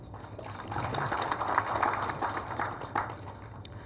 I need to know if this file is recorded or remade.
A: recorded